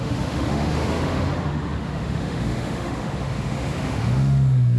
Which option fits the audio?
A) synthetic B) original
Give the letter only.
A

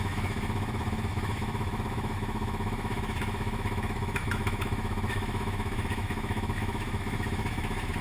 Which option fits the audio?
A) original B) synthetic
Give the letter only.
B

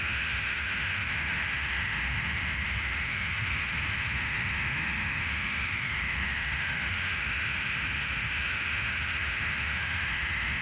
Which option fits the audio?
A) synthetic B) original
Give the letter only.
A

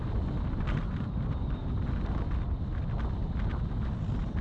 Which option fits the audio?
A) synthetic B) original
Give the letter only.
B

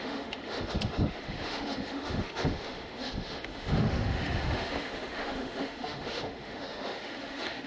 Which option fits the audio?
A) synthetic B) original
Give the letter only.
A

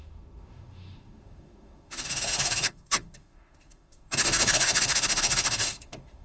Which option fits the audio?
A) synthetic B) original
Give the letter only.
A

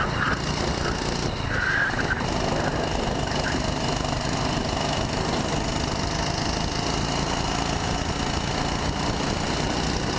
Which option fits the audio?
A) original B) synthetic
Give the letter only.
A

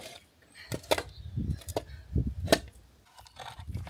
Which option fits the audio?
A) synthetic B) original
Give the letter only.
B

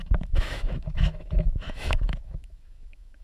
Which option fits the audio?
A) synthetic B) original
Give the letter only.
A